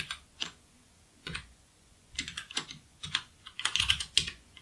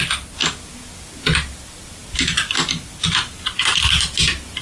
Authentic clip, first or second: second